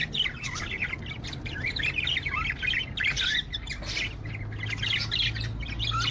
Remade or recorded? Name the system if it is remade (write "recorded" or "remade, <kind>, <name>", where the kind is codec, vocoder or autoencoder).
recorded